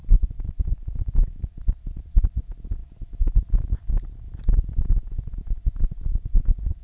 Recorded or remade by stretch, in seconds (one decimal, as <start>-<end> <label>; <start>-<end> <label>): 0.0-2.0 remade; 2.0-2.8 recorded; 2.8-3.9 remade; 3.9-6.8 recorded